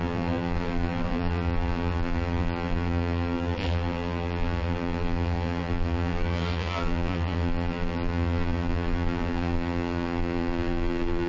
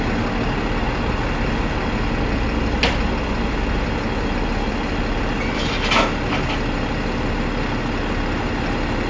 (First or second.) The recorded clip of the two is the second